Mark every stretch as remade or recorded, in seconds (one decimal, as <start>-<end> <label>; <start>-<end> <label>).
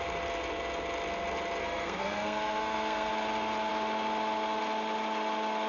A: 0.0-1.6 recorded; 1.6-3.1 remade; 3.1-5.7 recorded